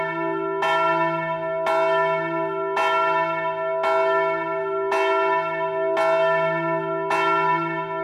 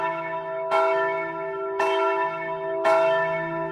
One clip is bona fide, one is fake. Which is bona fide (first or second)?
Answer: first